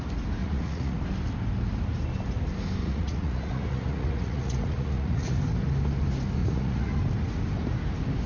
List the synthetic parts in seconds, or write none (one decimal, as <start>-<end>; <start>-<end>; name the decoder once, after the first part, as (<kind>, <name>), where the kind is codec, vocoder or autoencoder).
0.4-1.0 (vocoder, Vocos); 2.8-5.4; 6.4-7.0